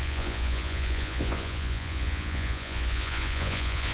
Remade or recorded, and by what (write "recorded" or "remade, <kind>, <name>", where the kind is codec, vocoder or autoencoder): remade, vocoder, Vocos